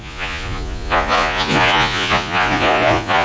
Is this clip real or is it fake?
fake